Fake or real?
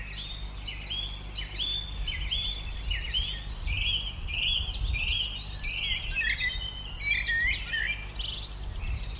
real